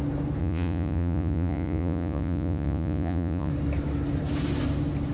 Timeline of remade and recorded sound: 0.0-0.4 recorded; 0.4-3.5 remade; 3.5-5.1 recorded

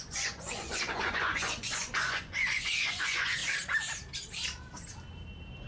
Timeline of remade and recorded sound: 0.0-3.4 remade; 3.4-5.7 recorded

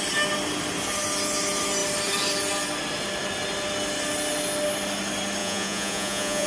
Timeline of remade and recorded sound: 0.0-5.4 recorded; 5.4-6.5 remade

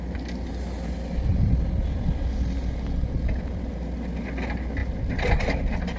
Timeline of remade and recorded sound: 0.0-6.0 recorded